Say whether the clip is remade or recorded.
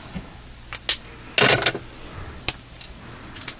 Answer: recorded